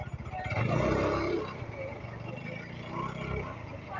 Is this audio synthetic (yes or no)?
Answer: no